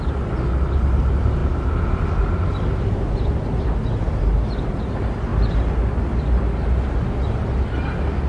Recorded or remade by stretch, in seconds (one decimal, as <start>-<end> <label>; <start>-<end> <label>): 0.0-8.3 recorded